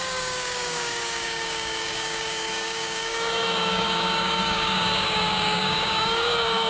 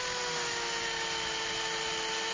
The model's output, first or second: first